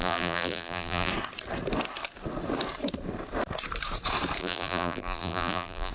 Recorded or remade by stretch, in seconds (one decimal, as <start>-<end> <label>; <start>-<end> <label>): 0.0-1.1 remade; 1.1-4.4 recorded; 4.4-5.9 remade